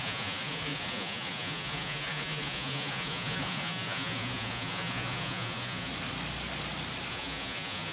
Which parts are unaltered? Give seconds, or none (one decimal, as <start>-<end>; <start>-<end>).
5.9-7.1